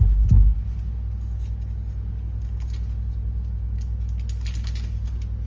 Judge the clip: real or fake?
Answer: real